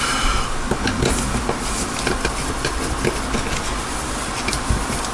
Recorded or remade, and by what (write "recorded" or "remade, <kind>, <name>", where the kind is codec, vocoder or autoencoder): recorded